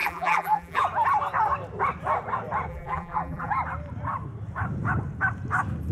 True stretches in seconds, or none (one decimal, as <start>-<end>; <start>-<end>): 0.8-2.7; 3.5-5.9